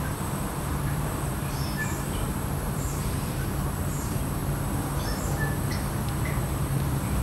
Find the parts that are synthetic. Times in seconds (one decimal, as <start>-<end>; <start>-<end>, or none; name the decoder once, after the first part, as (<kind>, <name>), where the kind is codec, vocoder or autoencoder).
0.0-4.4 (vocoder, BigVGAN v2); 6.4-7.2